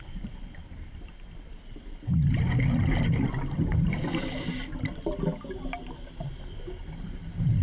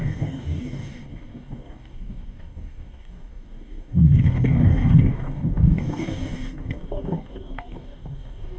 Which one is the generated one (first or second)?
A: second